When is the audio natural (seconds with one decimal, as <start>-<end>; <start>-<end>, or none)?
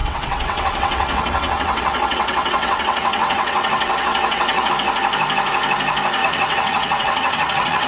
4.7-6.2